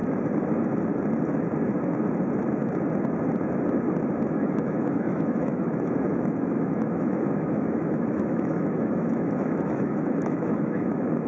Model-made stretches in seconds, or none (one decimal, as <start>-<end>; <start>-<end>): 4.3-11.3